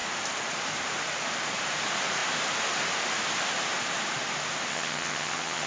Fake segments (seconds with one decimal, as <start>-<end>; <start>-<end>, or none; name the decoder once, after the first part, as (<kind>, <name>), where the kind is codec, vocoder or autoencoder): 4.7-5.7 (vocoder, HiFi-GAN)